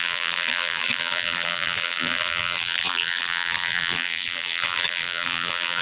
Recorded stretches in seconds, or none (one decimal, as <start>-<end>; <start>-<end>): none